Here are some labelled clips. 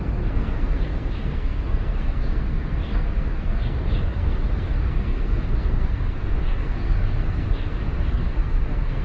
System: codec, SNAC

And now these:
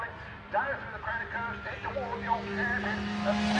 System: none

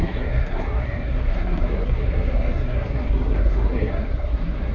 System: codec, SNAC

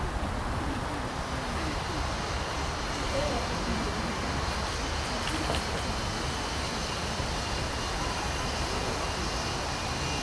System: none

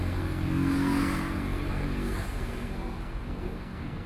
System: codec, SNAC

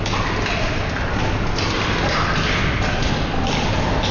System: none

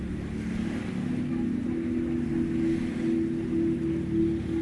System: none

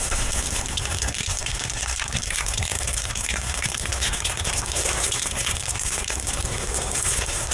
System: codec, SNAC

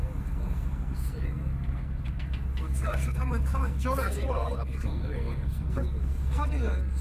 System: codec, SNAC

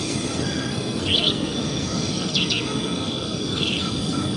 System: codec, SNAC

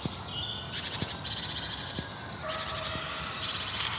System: none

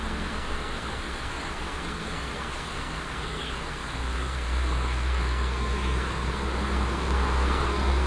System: codec, SNAC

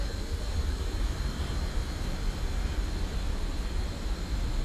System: none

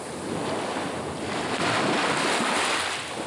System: none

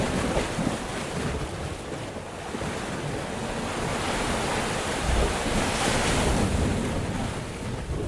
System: none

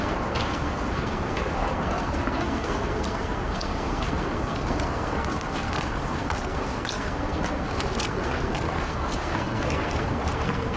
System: codec, SNAC